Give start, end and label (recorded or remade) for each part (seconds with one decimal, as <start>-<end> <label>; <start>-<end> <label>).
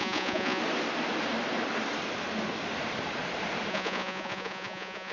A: 0.0-0.6 remade; 0.6-3.7 recorded; 3.7-5.1 remade